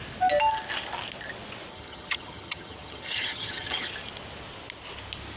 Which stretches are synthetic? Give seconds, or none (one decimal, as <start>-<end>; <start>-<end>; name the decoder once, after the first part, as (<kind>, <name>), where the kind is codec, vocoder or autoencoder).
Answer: 1.7-3.9 (vocoder, HiFi-GAN)